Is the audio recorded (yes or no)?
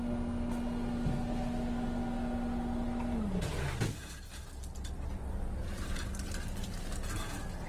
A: yes